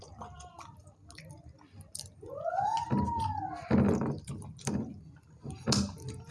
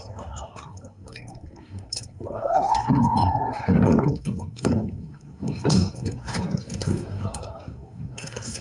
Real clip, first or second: first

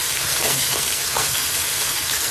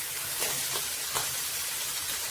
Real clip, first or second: second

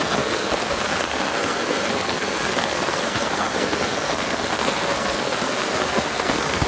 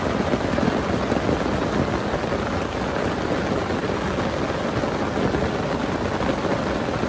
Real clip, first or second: second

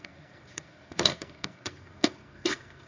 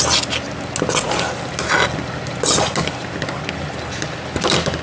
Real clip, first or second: second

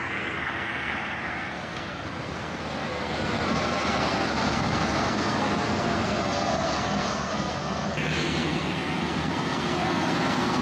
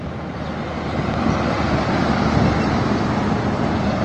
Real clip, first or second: second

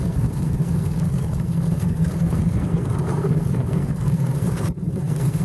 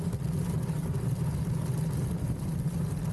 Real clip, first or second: second